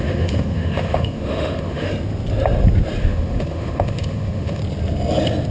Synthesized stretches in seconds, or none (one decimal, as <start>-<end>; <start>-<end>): 0.0-1.9; 3.0-4.6